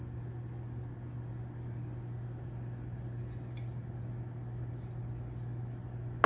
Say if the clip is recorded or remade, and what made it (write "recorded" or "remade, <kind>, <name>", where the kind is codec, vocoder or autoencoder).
recorded